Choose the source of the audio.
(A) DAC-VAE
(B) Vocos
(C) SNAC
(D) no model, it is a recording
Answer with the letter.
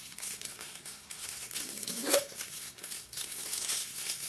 C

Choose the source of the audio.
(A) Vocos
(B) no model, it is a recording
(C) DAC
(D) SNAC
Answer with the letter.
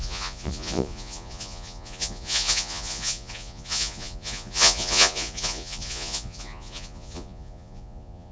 A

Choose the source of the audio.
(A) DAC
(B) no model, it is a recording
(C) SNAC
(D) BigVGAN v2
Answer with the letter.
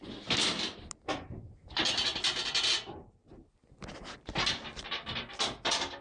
B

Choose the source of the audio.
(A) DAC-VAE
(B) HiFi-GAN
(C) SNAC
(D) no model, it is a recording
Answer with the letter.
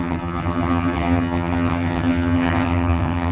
B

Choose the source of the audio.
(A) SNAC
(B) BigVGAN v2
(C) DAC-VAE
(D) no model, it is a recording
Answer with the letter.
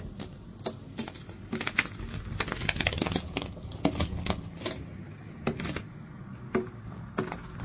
D